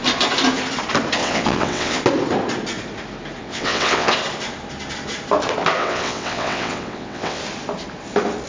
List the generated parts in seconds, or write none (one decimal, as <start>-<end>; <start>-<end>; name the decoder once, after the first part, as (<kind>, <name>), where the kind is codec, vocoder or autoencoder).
1.2-2.0 (vocoder, WaveNeXt); 3.4-4.1; 5.8-7.4